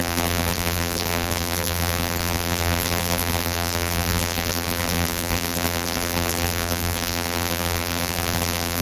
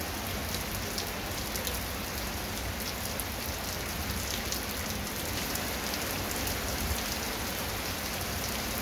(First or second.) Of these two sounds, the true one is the second